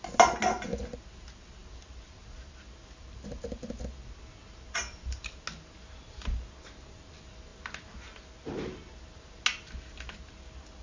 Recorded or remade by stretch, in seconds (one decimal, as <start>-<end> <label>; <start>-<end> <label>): 0.0-4.4 recorded; 4.4-5.3 remade; 5.3-10.8 recorded